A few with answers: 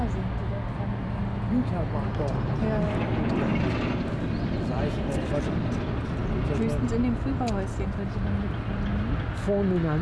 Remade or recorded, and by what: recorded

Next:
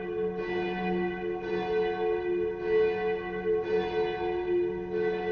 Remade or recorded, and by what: recorded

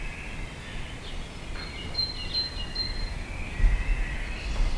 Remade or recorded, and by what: recorded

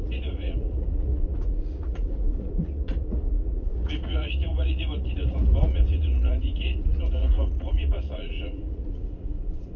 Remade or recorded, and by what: remade, vocoder, Vocos